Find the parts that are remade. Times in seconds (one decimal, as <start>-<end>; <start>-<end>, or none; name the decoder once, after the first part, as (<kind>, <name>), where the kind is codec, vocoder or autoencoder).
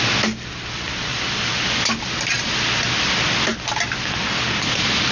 none